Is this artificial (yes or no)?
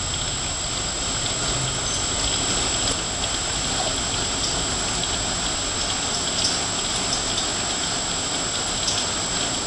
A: no